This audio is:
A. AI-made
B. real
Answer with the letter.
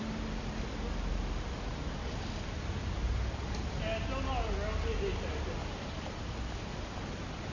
B